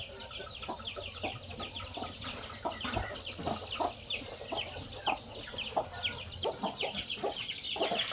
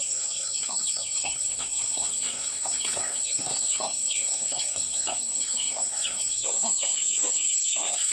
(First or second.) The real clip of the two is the first